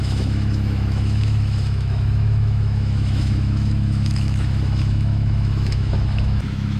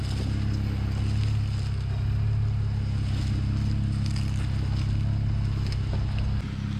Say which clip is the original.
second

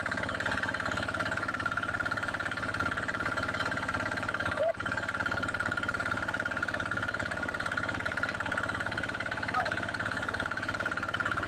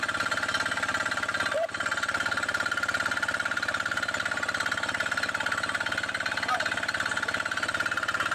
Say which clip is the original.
second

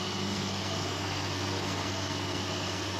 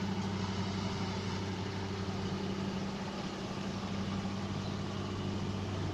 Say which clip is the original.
second